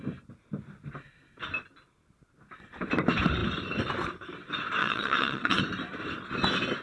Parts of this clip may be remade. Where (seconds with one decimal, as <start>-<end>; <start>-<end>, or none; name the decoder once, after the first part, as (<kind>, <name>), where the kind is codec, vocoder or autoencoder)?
4.8-5.6 (vocoder, WaveNeXt)